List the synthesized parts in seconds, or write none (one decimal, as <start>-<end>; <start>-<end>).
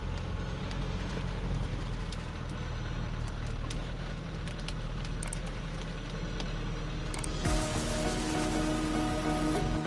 none